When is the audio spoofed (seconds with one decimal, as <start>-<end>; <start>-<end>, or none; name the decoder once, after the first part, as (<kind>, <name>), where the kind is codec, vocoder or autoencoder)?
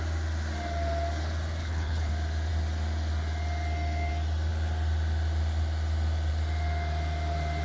1.6-2.1 (codec, HILCodec)